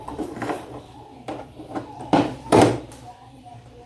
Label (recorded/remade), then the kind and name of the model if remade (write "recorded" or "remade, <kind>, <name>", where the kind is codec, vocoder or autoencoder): remade, vocoder, BigVGAN v2